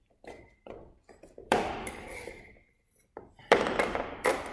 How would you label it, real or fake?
fake